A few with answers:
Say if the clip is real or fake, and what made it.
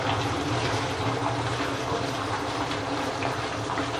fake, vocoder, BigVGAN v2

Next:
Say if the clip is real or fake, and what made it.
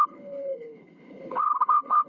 fake, codec, HILCodec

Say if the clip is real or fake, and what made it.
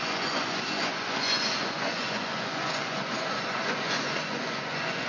fake, vocoder, Vocos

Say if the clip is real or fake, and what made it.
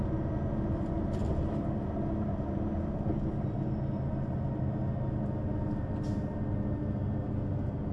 real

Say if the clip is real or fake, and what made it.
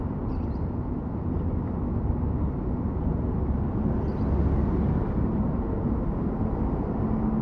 real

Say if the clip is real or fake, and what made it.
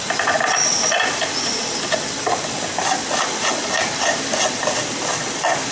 real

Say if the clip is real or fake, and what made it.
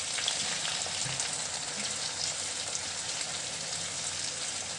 real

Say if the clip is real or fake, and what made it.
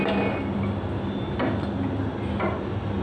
real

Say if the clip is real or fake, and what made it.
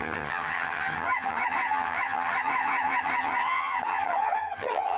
fake, vocoder, HiFi-GAN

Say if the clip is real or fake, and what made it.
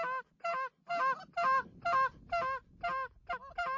real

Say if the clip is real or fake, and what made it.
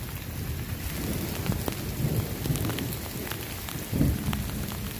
real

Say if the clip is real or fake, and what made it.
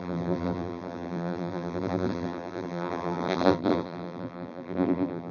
fake, vocoder, BigVGAN v2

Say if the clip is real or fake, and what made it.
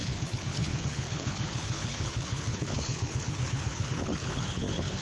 fake, codec, HILCodec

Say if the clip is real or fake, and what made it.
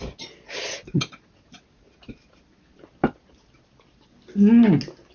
real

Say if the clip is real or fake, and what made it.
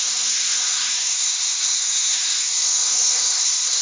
fake, codec, SNAC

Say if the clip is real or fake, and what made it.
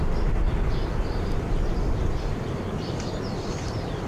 real